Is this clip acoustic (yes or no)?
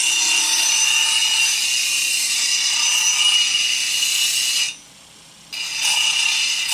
yes